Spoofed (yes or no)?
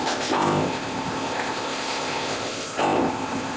yes